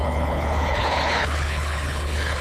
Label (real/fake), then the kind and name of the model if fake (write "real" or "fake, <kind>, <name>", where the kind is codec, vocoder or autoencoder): fake, codec, HILCodec